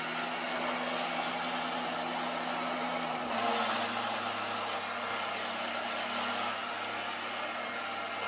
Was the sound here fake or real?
real